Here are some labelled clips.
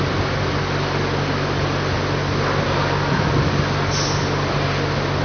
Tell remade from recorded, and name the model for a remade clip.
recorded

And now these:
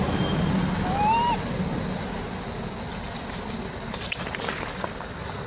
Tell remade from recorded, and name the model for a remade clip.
recorded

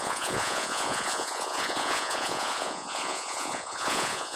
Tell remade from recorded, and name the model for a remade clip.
remade, vocoder, Vocos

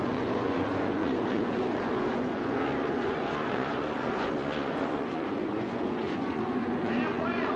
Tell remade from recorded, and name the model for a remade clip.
remade, vocoder, Vocos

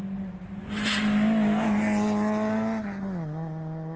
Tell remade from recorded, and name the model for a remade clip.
recorded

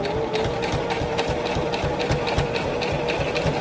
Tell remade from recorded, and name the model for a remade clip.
recorded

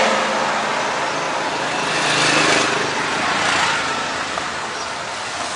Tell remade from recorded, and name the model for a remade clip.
recorded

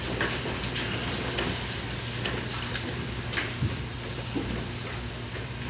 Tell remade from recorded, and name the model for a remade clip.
recorded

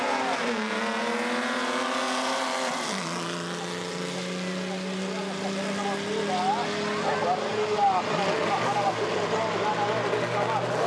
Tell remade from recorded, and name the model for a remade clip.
recorded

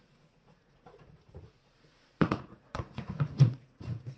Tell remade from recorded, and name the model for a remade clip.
remade, vocoder, Vocos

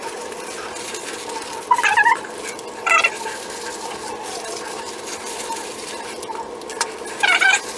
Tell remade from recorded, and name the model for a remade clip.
recorded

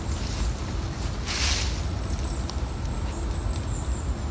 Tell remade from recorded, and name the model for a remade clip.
recorded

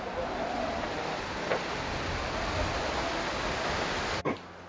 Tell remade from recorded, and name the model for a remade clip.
recorded